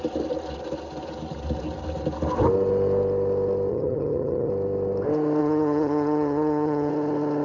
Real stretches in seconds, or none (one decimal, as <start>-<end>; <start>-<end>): 0.0-3.7; 4.5-5.4; 6.9-7.4